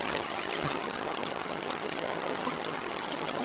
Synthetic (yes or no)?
yes